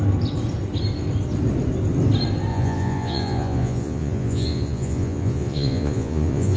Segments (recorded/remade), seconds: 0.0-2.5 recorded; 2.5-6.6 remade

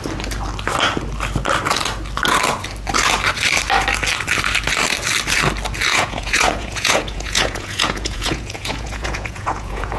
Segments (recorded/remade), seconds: 0.0-5.9 recorded; 5.9-10.0 remade

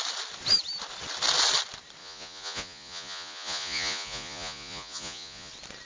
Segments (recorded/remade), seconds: 0.0-2.0 recorded; 2.0-5.5 remade; 5.5-5.9 recorded

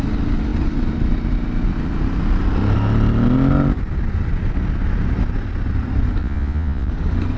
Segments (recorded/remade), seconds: 0.0-6.2 recorded; 6.2-6.9 remade; 6.9-7.4 recorded

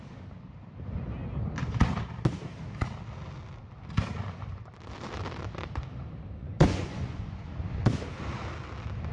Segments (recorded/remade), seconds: 0.0-6.4 recorded; 6.4-7.4 remade; 7.4-9.1 recorded

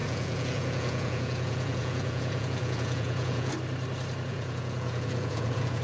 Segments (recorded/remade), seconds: 0.0-3.5 remade; 3.5-4.3 recorded; 4.3-5.8 remade

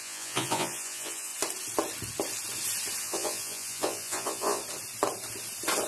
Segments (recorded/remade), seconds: 0.0-1.3 remade; 1.3-3.0 recorded; 3.0-4.6 remade; 4.6-5.9 recorded